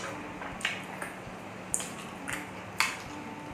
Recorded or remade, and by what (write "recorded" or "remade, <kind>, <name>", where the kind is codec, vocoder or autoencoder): recorded